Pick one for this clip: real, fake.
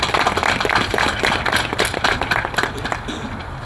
real